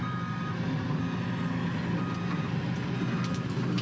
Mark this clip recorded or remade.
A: recorded